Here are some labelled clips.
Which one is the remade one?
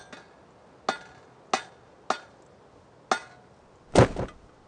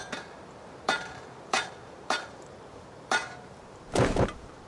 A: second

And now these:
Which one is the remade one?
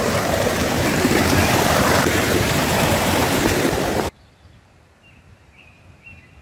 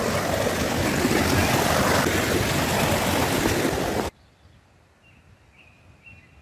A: first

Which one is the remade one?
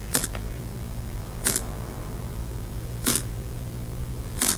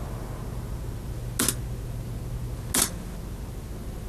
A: first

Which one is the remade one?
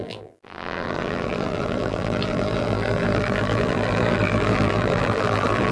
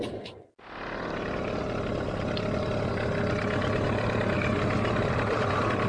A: first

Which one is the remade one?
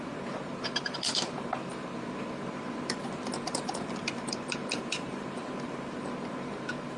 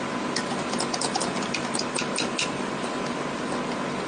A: first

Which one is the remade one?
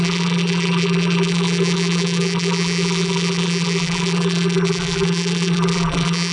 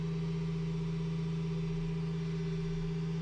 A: first